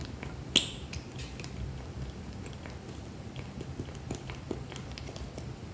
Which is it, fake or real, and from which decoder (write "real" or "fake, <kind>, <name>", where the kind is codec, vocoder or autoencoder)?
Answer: real